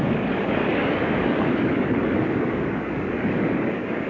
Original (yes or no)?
no